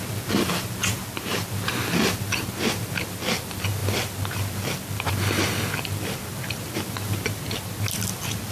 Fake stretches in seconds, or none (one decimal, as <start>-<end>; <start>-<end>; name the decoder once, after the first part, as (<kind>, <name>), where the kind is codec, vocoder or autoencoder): none